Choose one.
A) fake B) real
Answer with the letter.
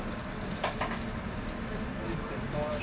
B